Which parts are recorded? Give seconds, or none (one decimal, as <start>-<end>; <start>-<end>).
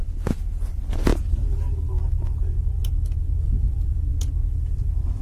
0.0-0.7; 1.1-3.6; 4.1-4.7